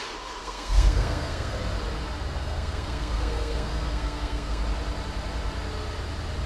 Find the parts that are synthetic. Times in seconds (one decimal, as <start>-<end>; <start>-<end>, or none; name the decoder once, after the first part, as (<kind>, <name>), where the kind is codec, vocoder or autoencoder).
0.4-1.6 (codec, SNAC); 2.4-4.6